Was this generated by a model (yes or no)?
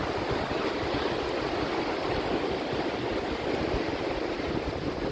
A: no